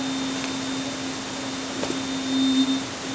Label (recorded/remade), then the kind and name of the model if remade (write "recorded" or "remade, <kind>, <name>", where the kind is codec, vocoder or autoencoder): recorded